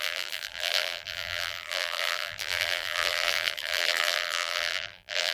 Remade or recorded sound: remade